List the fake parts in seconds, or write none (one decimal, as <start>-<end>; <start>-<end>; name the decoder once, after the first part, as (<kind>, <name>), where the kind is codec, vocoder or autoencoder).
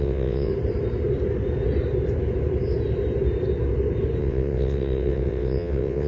0.0-0.5 (vocoder, WaveNeXt); 4.2-6.1